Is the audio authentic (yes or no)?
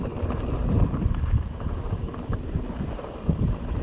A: yes